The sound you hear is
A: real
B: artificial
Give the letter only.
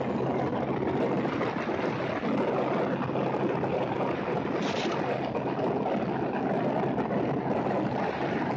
A